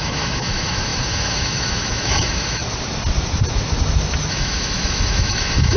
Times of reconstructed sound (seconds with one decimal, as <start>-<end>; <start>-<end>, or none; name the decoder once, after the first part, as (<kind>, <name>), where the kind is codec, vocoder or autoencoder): 0.0-2.6 (autoencoder, DAC-VAE); 4.3-5.8